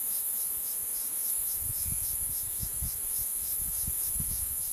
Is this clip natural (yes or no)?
no